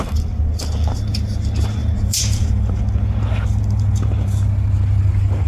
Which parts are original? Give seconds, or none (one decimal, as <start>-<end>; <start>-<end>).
0.0-1.8; 2.8-5.5